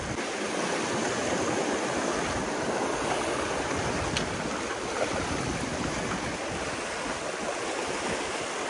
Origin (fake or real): real